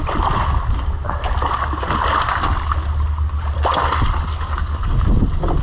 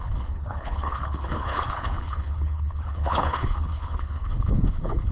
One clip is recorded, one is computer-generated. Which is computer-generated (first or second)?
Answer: second